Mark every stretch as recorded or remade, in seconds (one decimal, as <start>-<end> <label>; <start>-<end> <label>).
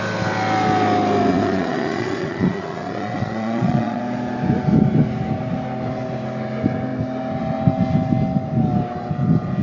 0.0-1.3 recorded; 1.3-4.0 remade; 4.0-9.6 recorded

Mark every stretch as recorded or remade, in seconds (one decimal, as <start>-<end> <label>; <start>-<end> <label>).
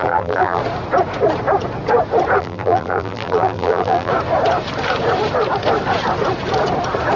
0.0-0.6 remade; 0.6-2.4 recorded; 2.4-4.1 remade; 4.1-7.2 recorded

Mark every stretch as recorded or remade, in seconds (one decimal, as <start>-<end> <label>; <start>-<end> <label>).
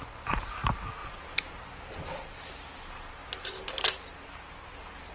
0.0-5.1 recorded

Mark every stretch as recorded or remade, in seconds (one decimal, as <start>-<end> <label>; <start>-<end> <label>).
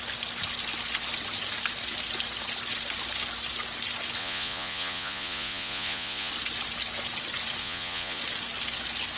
0.0-4.2 recorded; 4.2-6.3 remade; 6.3-7.6 recorded; 7.6-8.2 remade; 8.2-9.2 recorded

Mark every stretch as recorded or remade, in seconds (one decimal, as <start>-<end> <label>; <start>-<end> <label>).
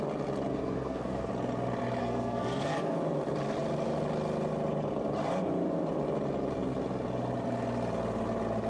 0.0-0.5 recorded; 0.5-1.3 remade; 1.3-2.0 recorded; 2.0-3.0 remade; 3.0-8.7 recorded